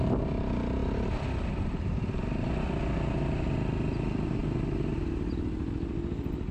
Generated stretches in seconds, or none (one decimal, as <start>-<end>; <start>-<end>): none